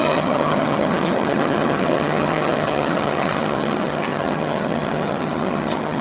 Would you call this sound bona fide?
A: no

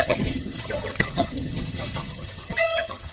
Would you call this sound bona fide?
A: no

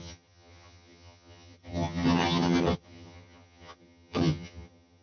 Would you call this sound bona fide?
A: no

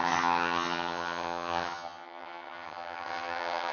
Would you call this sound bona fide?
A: no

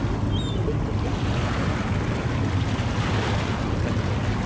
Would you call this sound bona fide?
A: yes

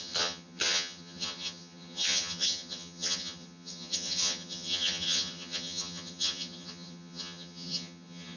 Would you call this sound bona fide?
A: no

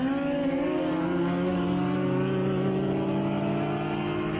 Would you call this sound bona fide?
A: yes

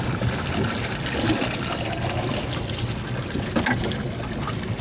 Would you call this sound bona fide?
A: yes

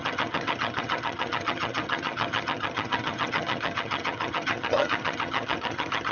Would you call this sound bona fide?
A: no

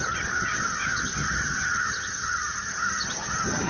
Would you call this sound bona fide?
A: no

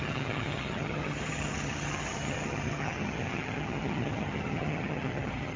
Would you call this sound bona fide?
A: no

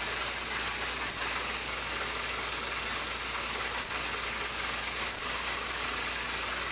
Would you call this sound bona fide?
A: yes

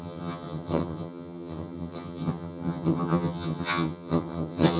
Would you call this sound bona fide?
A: no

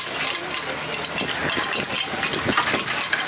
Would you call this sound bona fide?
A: yes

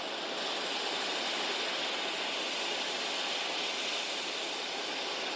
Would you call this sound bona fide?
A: yes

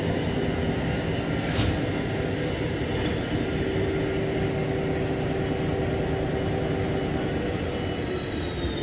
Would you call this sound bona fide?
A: yes